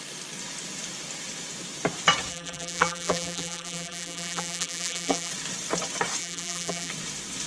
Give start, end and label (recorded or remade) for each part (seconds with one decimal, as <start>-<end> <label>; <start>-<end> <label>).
0.0-2.3 recorded; 2.3-5.3 remade; 5.3-6.2 recorded; 6.2-6.9 remade; 6.9-7.5 recorded